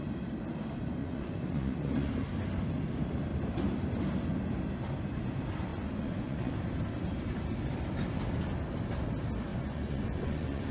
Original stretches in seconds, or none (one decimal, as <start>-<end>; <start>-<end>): 0.0-1.0; 2.1-5.7; 6.5-9.5